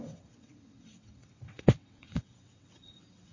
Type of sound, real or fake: fake